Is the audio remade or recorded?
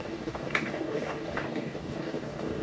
remade